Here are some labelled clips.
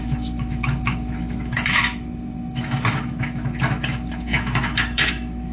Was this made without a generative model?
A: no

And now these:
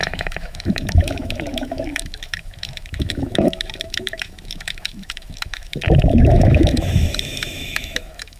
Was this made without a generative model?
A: no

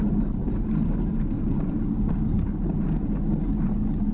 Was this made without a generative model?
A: yes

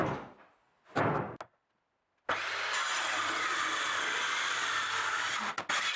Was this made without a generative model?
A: yes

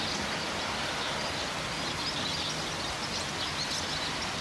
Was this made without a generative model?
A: yes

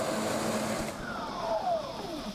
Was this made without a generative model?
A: yes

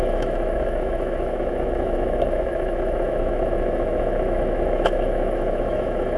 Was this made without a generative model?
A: no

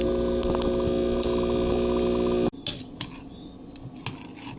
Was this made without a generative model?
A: yes